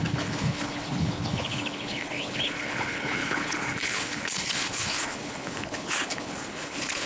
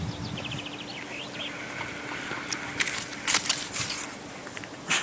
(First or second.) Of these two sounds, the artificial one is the first